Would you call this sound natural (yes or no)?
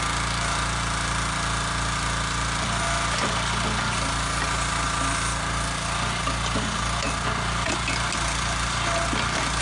yes